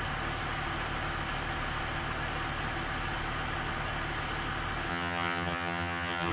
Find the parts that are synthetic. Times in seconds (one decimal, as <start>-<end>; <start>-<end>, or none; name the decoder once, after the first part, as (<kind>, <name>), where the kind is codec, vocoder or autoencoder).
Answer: 4.9-6.3 (vocoder, HiFi-GAN)